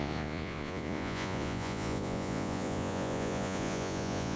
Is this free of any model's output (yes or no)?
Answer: no